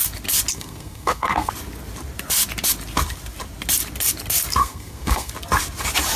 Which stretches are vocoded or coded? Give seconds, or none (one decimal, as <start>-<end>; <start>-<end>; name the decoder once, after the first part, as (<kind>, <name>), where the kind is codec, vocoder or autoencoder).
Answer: 0.5-1.5 (codec, SNAC); 4.6-5.3